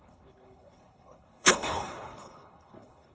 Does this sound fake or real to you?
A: fake